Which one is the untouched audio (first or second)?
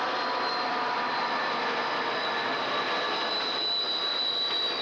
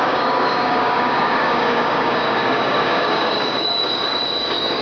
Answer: first